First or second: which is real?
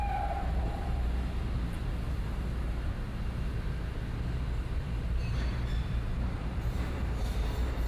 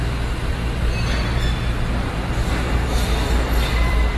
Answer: second